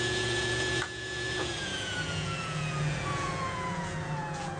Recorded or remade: remade